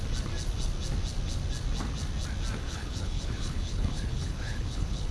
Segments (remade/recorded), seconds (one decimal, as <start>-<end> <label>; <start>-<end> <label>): 0.0-2.6 recorded; 2.6-5.1 remade